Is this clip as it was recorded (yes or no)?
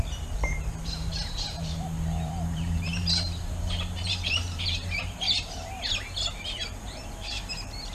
no